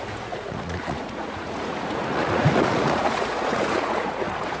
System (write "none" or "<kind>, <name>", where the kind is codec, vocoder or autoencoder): vocoder, Vocos